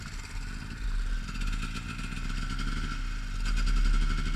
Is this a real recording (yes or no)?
yes